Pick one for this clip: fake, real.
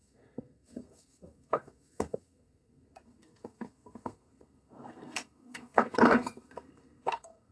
fake